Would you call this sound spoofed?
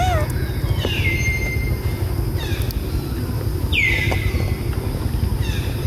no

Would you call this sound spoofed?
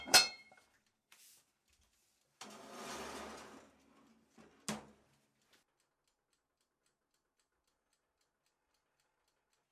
no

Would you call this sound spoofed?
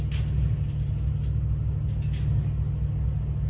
no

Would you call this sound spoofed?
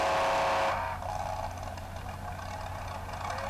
no